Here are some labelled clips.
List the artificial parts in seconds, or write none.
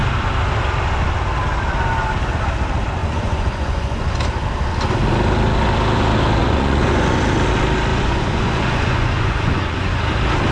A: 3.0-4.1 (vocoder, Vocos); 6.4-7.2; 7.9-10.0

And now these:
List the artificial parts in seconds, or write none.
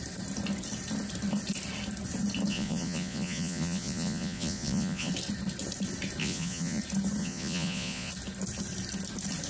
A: 2.5-5.1 (vocoder, Vocos); 6.2-6.8; 7.2-8.1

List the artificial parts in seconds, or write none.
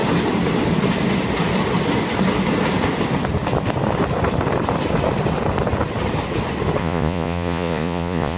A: 6.8-8.4 (vocoder, Vocos)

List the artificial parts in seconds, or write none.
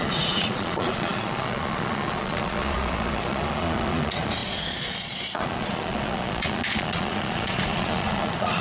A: 0.0-8.6 (vocoder, Vocos)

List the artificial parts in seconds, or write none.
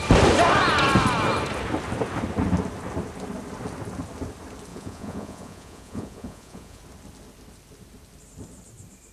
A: 4.7-6.8 (vocoder, Vocos)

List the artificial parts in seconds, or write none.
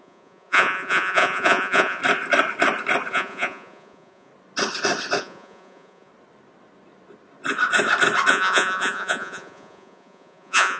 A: 0.0-2.0 (vocoder, Vocos); 3.1-4.3; 5.2-6.1; 8.3-10.8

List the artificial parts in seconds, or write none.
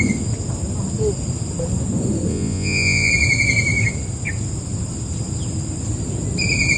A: 2.3-3.1 (vocoder, Vocos)